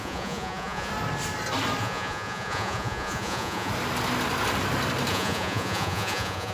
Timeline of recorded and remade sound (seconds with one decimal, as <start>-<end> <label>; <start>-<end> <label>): 0.0-0.9 remade; 0.9-1.8 recorded; 1.8-3.7 remade; 3.7-5.1 recorded; 5.1-6.5 remade